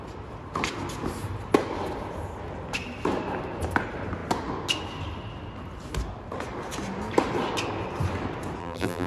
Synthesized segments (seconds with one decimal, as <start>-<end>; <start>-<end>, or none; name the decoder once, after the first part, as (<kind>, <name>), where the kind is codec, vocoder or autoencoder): 8.6-9.1 (vocoder, BigVGAN v2)